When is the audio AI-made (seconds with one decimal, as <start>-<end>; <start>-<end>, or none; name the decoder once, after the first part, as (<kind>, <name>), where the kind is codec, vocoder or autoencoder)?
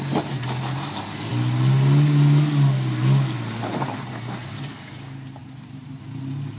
5.4-6.0 (vocoder, BigVGAN v2)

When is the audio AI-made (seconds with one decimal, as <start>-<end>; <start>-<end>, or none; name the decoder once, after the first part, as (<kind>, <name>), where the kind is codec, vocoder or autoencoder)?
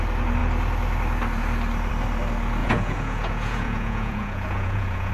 2.6-5.1 (vocoder, Vocos)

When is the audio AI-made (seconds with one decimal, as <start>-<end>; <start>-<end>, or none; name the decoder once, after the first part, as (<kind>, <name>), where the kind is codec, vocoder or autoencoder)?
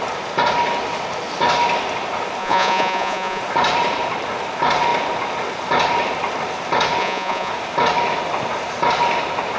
2.4-3.4 (vocoder, Vocos); 7.0-7.5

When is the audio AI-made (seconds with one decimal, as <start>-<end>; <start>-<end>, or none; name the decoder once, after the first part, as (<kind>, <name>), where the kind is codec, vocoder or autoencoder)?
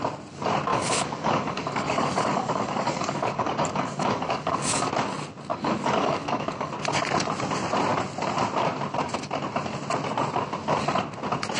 0.7-4.9 (codec, DAC); 5.5-6.7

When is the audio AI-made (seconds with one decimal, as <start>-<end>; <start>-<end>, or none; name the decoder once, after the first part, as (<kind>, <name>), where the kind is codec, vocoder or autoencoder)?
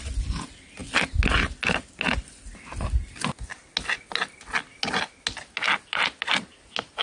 none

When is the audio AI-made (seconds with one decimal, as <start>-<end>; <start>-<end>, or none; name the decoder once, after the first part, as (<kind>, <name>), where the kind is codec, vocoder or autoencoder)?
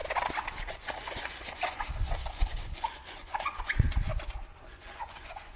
0.6-4.1 (vocoder, Vocos); 4.7-5.6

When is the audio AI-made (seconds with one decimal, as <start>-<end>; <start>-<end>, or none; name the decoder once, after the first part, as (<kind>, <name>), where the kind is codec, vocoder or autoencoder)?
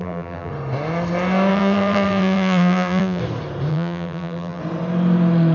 0.0-0.5 (vocoder, BigVGAN v2); 1.5-3.2; 3.7-4.6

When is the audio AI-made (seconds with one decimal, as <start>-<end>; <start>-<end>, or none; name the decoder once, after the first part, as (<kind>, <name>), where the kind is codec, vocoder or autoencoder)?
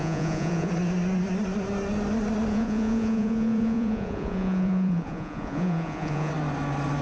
0.0-0.7 (vocoder, Vocos); 2.5-6.3